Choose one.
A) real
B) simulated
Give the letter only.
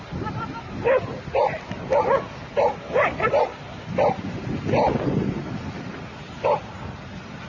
A